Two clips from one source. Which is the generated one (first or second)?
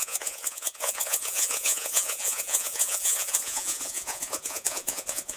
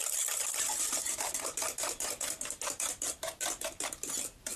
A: first